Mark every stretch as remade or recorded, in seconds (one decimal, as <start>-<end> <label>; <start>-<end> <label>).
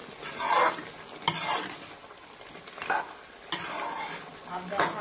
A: 0.0-5.0 recorded